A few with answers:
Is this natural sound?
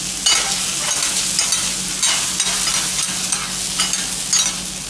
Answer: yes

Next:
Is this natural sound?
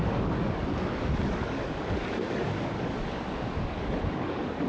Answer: no